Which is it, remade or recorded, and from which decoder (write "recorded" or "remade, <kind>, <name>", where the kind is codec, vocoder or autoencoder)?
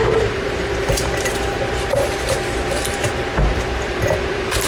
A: remade, vocoder, BigVGAN v2